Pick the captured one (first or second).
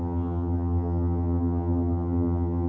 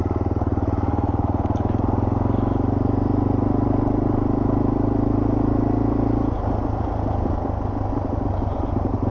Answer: second